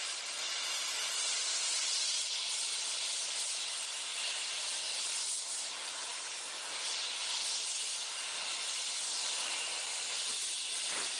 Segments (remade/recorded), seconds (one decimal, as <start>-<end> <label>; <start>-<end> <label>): 0.0-11.2 recorded